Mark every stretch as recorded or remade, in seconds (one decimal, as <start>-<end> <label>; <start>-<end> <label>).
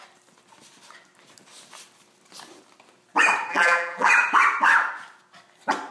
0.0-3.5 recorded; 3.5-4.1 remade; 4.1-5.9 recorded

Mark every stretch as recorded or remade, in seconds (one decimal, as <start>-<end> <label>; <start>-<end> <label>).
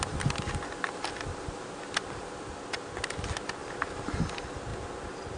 0.0-5.4 recorded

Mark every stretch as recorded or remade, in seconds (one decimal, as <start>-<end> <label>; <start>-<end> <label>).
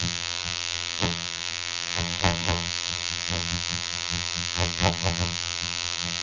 0.0-6.2 remade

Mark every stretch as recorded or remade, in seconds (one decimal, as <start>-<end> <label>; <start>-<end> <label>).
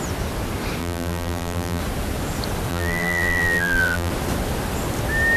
0.0-0.8 recorded; 0.8-1.8 remade; 1.8-2.7 recorded; 2.7-4.1 remade; 4.1-5.4 recorded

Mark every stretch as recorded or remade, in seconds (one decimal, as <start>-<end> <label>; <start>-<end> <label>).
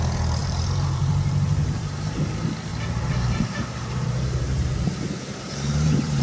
0.0-0.4 recorded; 0.4-2.3 remade; 2.3-2.7 recorded; 2.7-6.2 remade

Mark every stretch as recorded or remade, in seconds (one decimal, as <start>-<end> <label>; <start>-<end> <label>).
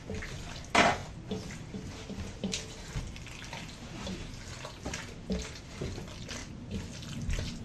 0.0-7.6 recorded